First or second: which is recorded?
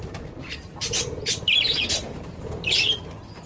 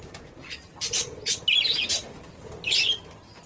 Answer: second